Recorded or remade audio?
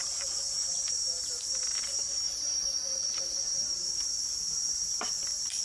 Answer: remade